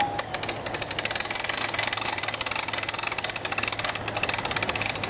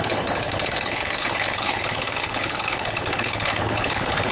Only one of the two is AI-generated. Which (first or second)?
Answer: second